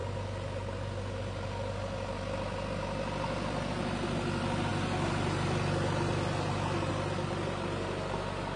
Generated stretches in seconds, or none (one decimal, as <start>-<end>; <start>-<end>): none